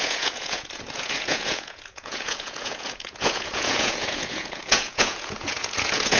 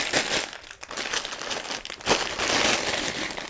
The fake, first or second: first